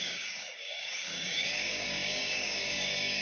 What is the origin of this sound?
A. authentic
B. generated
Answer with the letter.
B